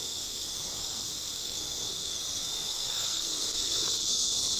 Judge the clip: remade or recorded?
remade